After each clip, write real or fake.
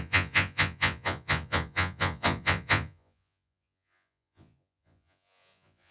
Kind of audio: fake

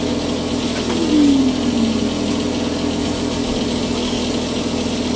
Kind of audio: real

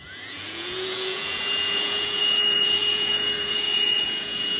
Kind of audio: fake